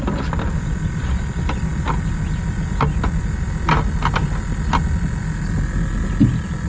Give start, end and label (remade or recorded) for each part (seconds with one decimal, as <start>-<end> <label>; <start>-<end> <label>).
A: 0.0-6.7 recorded